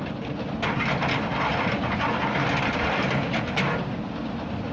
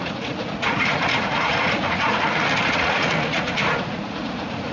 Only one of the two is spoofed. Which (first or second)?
second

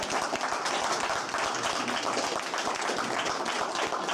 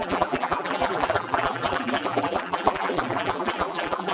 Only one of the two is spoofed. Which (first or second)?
second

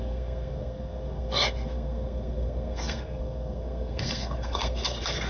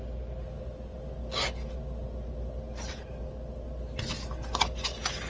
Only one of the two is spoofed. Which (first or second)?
first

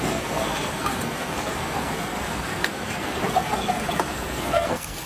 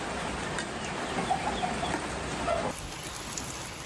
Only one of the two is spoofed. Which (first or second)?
first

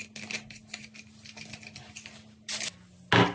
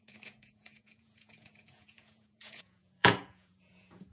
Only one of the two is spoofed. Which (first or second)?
second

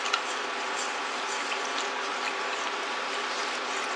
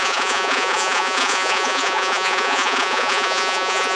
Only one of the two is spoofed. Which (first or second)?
second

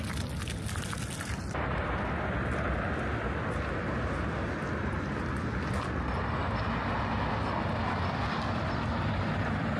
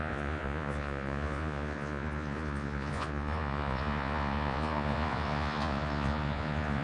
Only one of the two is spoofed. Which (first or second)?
second